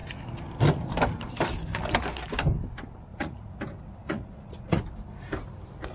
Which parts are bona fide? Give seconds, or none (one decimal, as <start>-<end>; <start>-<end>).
0.0-3.1; 3.6-4.0; 4.8-5.9